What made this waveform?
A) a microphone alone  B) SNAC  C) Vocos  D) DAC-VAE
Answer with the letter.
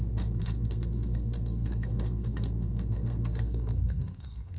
B